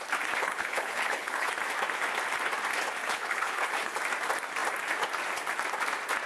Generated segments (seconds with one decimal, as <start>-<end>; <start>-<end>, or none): 0.4-1.5; 3.0-4.0